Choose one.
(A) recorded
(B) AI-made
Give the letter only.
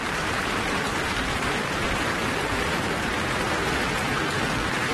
B